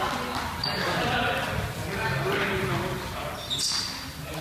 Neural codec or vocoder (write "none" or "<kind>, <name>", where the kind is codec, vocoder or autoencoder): none